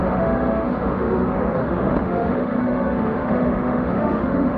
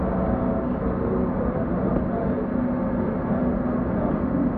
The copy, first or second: first